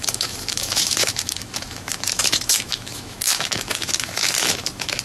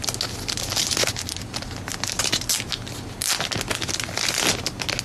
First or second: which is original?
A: second